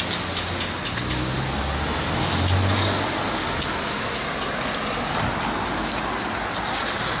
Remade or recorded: recorded